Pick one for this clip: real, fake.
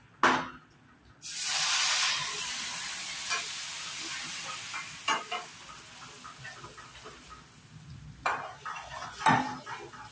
real